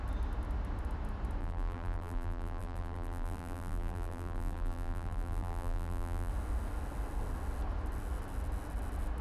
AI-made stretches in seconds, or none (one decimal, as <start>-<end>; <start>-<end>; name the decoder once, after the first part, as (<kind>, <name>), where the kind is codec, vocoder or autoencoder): 1.4-6.3 (vocoder, BigVGAN v2)